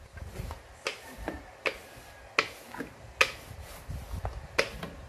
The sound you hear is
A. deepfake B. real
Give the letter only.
B